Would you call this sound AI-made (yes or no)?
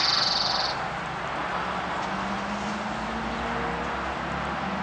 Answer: no